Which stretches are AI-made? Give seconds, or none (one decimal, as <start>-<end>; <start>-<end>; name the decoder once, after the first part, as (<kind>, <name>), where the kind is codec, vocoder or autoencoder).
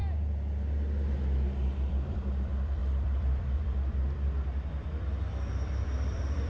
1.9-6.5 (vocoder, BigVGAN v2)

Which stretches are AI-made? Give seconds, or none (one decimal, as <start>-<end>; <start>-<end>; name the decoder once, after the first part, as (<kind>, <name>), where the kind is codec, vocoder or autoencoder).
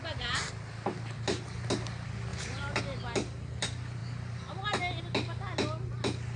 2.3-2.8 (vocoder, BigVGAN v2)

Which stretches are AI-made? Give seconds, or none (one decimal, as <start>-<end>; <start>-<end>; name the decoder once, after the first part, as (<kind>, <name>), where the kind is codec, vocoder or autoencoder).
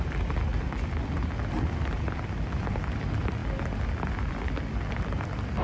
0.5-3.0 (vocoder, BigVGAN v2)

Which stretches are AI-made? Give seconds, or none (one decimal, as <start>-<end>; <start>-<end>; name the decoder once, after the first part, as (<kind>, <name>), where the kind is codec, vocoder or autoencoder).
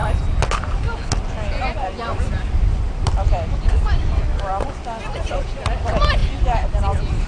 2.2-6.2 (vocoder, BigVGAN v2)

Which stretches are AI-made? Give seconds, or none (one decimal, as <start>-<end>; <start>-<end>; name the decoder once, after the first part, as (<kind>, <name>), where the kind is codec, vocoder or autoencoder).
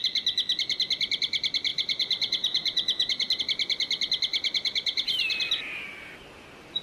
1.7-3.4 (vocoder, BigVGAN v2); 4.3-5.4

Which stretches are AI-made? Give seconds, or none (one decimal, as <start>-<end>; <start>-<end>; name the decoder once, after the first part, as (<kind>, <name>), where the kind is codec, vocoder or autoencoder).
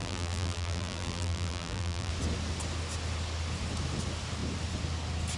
0.0-2.1 (vocoder, BigVGAN v2)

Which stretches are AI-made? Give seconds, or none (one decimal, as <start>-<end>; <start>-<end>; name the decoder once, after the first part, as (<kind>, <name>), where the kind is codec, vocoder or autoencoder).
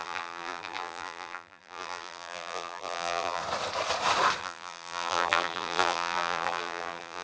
0.0-3.4 (vocoder, BigVGAN v2); 4.4-7.2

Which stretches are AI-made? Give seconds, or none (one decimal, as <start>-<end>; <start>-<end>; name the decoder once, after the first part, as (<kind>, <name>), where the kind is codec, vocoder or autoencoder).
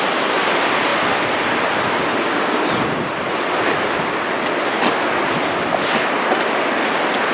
none